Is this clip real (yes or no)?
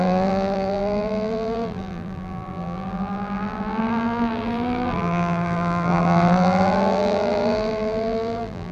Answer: no